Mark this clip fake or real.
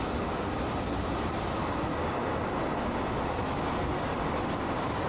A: real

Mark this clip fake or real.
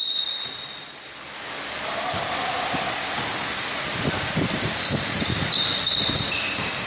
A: real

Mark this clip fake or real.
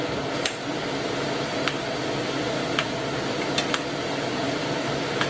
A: real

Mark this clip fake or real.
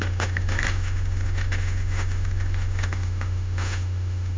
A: fake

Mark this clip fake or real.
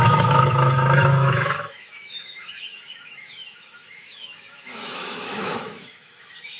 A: fake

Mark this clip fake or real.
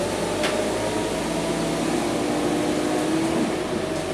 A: real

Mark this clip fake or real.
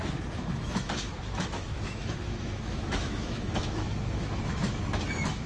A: fake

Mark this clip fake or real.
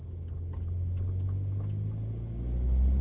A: real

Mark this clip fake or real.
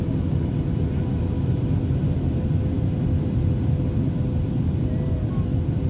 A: real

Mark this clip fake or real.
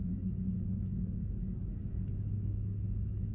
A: fake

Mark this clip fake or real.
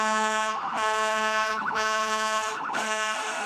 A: fake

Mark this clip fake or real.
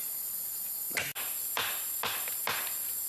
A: real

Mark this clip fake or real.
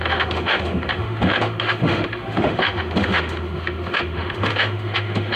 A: fake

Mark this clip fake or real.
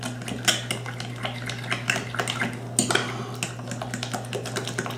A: real